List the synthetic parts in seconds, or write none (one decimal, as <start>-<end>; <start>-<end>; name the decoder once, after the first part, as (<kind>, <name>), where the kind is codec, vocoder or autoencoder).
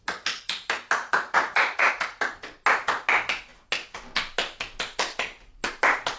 1.0-1.9 (vocoder, Vocos)